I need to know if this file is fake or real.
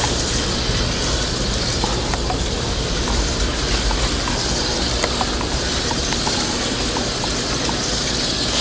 real